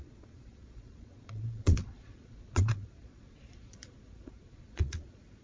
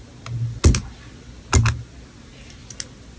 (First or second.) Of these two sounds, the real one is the second